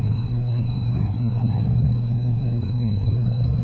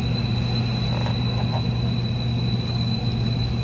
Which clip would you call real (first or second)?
second